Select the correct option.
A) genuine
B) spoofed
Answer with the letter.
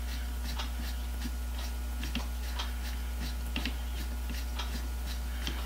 A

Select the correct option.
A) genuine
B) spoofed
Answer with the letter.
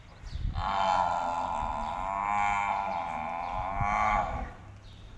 A